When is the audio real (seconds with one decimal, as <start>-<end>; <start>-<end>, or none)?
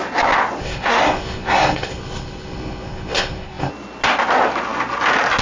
0.0-0.6; 3.7-5.4